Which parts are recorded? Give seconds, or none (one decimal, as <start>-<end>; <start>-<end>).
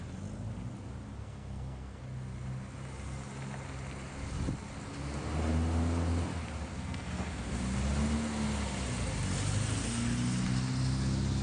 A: 0.0-1.2; 2.0-6.7; 7.6-11.4